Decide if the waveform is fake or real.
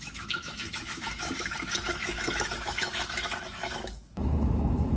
fake